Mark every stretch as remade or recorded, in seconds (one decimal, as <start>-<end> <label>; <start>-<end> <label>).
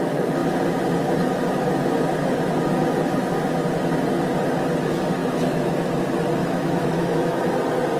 0.0-5.2 recorded; 5.2-5.9 remade; 5.9-6.4 recorded; 6.4-7.5 remade; 7.5-8.0 recorded